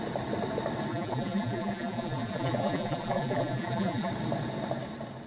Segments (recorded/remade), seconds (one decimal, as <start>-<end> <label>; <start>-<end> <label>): 0.0-0.9 recorded; 0.9-4.1 remade; 4.1-5.3 recorded